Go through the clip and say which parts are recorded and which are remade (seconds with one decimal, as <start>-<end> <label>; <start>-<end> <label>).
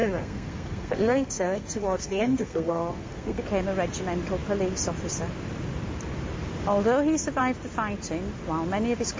0.0-3.4 remade; 3.4-9.2 recorded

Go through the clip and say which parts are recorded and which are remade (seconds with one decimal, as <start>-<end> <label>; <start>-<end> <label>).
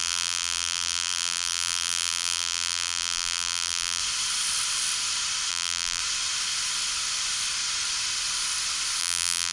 0.0-4.0 remade; 4.0-5.5 recorded; 5.5-6.0 remade; 6.0-9.0 recorded; 9.0-9.5 remade